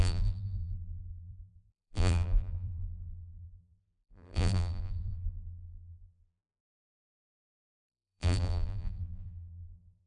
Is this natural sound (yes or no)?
no